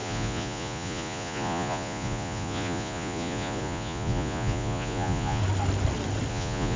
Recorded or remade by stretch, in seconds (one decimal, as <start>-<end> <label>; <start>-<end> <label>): 0.0-5.4 remade; 5.4-6.3 recorded; 6.3-6.8 remade